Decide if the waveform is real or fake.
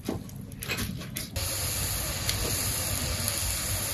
real